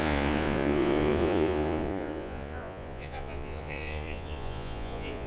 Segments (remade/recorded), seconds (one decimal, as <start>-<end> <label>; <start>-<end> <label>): 0.0-5.3 remade